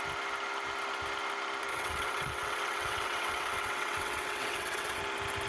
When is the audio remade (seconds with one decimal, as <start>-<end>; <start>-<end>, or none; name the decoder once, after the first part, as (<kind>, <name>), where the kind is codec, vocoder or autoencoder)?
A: 1.7-5.0 (vocoder, WaveNeXt)